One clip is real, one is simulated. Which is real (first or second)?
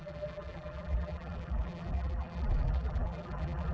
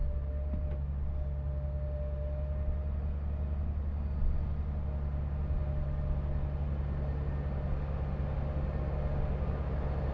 second